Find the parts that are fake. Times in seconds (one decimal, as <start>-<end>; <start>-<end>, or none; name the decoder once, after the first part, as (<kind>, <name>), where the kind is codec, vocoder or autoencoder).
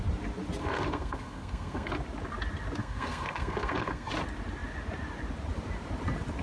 0.6-1.9 (codec, SNAC); 2.8-4.1